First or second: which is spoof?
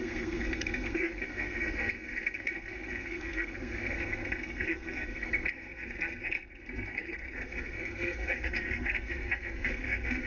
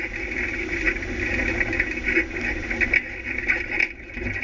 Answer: first